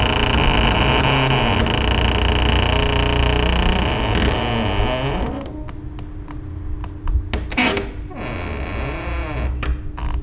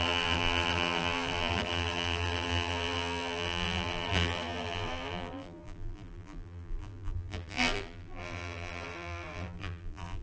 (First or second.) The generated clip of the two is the second